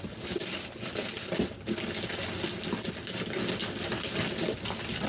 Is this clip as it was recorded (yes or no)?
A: yes